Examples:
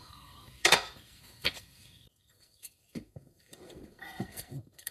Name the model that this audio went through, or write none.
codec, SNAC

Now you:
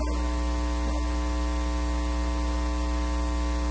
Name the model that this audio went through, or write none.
none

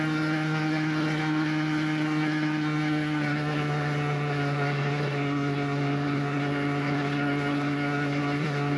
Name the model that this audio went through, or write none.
codec, SNAC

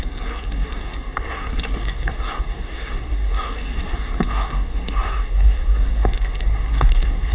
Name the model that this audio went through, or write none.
codec, SNAC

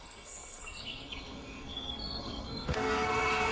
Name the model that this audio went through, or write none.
codec, SNAC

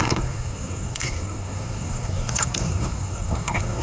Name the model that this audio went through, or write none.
codec, SNAC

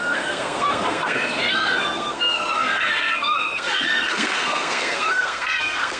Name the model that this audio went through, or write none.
codec, SNAC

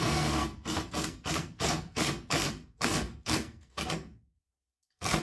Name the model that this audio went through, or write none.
codec, SNAC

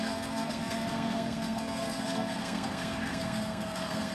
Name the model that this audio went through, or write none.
codec, SNAC